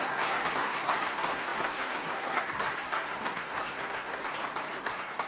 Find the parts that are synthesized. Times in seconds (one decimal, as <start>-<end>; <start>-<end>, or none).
0.0-4.2; 4.8-5.3